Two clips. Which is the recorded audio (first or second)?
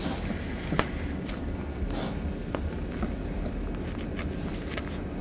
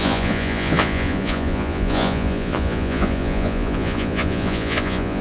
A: first